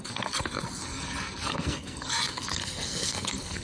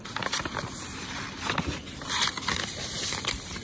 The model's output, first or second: first